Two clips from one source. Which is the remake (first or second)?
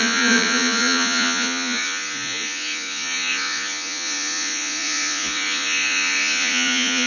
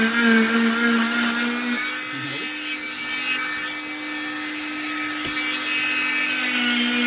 first